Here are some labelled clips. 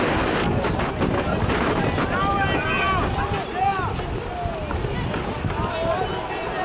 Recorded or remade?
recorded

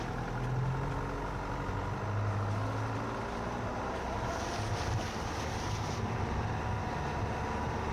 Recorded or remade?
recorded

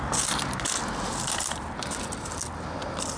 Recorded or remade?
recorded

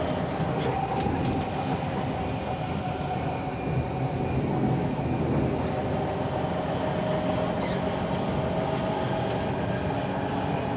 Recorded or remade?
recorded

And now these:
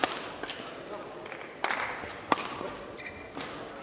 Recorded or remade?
recorded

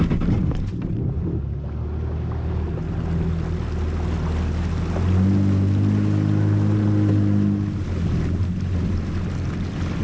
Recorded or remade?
recorded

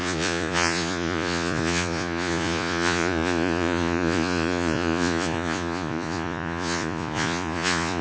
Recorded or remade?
remade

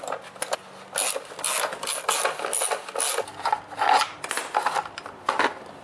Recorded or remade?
recorded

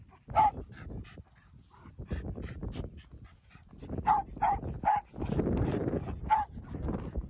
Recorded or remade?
recorded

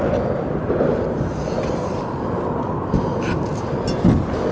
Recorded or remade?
recorded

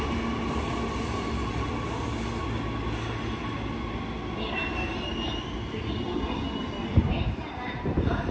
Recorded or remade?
recorded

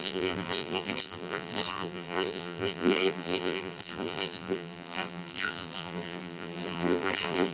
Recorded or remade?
remade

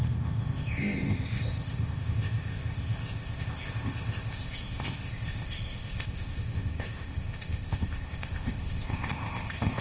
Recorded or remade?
remade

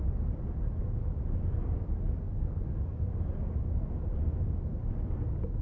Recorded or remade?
recorded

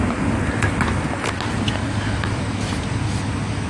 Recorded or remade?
recorded